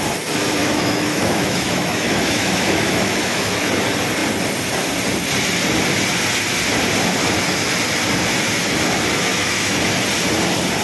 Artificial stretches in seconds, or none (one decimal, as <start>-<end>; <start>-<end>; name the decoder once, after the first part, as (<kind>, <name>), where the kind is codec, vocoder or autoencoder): 0.6-3.7 (autoencoder, DAC-VAE); 9.3-9.8